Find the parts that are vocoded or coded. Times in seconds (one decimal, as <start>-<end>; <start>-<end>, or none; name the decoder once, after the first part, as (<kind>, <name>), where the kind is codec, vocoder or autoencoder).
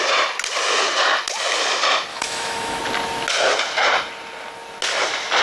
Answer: 2.1-2.8 (autoencoder, DAC-VAE)